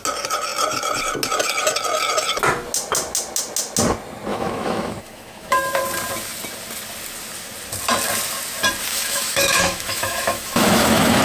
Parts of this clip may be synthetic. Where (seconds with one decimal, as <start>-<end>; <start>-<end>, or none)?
4.3-5.8; 8.9-11.2